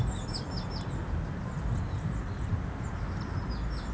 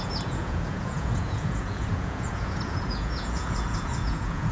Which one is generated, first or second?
second